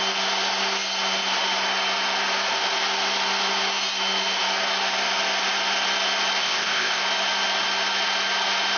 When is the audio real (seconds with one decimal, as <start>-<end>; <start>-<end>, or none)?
0.0-6.4; 7.0-8.8